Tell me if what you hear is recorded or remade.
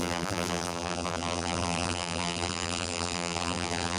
remade